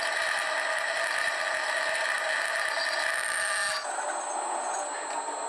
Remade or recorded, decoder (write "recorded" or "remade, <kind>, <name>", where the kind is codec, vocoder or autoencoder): recorded